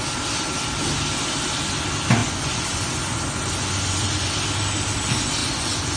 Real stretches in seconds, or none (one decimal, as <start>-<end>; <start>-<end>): 0.0-2.2; 4.3-5.4